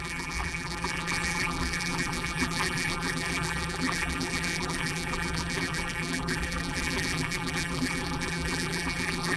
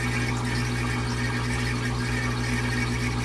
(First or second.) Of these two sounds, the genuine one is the second